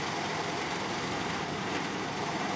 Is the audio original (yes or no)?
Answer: no